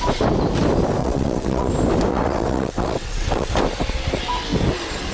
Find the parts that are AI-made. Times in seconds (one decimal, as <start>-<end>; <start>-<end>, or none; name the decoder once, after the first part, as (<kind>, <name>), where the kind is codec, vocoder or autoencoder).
1.0-1.7 (vocoder, WaveNeXt); 2.1-3.5